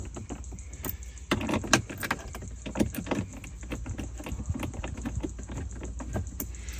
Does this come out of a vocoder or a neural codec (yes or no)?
no